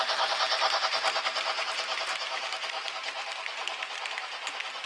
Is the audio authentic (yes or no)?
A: yes